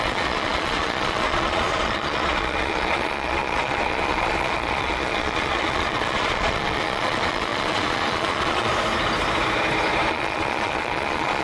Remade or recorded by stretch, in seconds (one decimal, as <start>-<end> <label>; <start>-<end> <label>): 0.0-8.7 remade; 8.7-10.1 recorded; 10.1-11.4 remade